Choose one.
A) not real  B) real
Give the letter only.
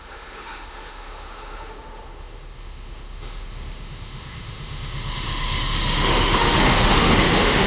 A